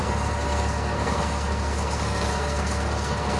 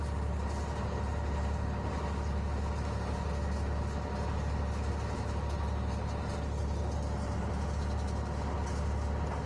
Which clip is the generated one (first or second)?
first